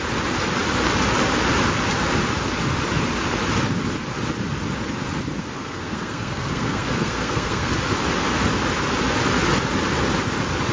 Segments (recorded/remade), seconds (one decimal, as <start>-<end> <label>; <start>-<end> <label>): 0.0-5.4 recorded; 5.4-7.7 remade; 7.7-10.7 recorded